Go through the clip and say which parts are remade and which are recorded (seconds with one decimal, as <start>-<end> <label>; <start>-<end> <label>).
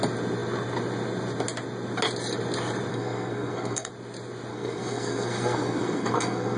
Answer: 0.0-2.9 recorded; 2.9-3.9 remade; 3.9-4.5 recorded; 4.5-6.6 remade